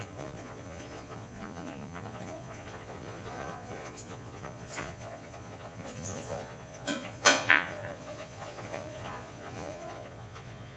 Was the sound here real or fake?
fake